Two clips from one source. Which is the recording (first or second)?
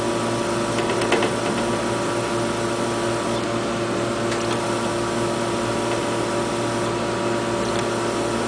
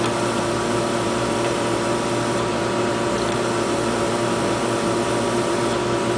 first